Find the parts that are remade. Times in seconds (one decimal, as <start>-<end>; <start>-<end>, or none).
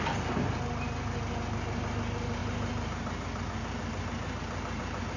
none